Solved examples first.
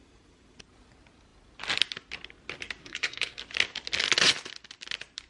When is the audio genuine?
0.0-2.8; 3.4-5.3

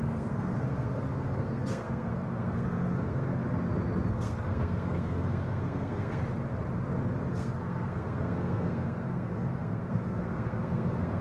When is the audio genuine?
3.4-4.1; 6.2-7.3

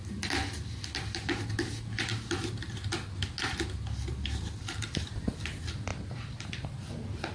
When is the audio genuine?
0.0-7.3